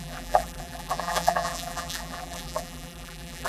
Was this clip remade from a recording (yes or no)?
yes